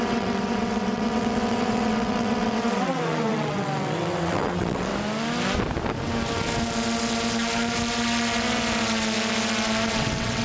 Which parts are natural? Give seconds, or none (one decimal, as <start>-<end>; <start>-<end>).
4.9-9.9